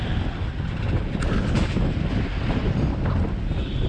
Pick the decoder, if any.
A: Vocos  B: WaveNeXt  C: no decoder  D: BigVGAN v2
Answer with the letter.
C